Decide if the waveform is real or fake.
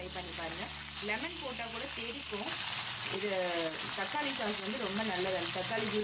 real